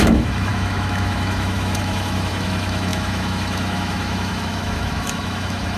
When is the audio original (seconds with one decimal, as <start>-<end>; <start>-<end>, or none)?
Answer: none